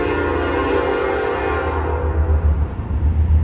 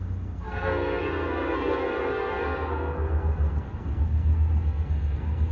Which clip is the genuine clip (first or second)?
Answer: first